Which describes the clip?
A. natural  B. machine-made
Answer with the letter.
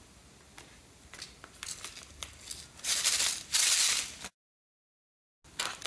A